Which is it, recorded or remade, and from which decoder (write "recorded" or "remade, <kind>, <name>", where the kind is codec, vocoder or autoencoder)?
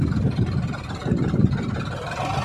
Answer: recorded